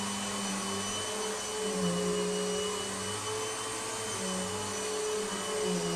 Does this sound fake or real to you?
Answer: real